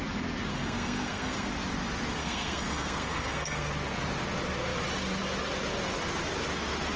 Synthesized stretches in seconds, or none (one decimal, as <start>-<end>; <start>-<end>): 0.5-1.5; 2.2-3.7